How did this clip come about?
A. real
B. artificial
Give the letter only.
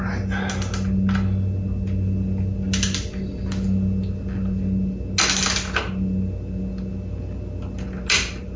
A